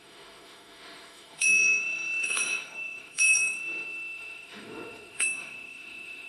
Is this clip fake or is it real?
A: fake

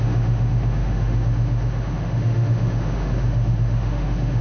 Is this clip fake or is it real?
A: fake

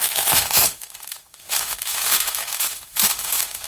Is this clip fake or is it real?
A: fake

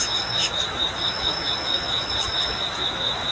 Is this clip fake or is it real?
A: fake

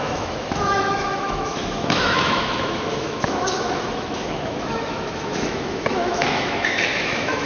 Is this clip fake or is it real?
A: fake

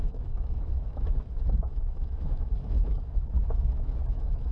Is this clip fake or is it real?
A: fake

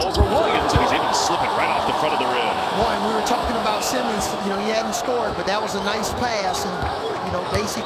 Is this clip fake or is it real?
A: fake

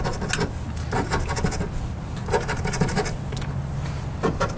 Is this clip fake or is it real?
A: real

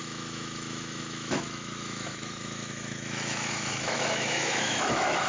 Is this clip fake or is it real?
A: fake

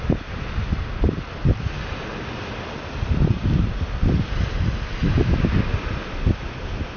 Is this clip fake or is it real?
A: real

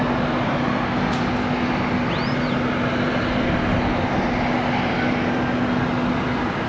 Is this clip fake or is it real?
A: real